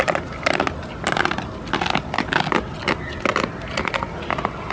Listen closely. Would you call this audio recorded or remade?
recorded